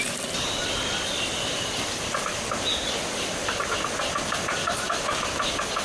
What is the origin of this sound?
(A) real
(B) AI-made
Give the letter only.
A